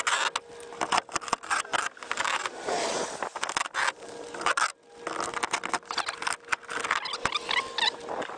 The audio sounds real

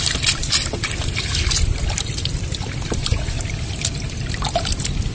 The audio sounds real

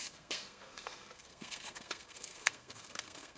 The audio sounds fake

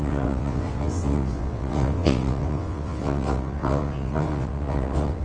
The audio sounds fake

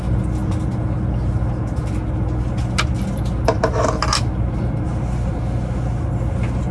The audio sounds real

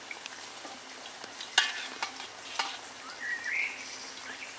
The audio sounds real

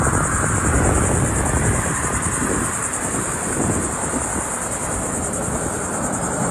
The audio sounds real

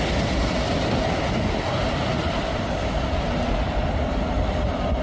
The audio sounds real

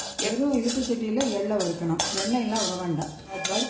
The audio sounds real